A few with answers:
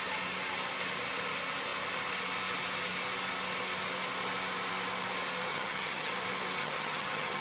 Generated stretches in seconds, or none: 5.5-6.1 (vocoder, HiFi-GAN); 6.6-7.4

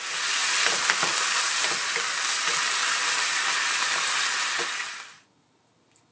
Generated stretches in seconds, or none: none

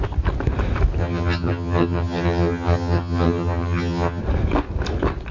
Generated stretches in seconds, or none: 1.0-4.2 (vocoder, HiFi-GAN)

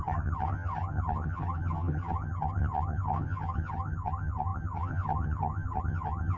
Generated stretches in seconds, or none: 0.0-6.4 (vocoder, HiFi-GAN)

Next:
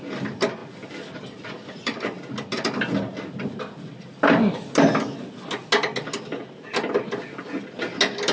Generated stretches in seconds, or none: none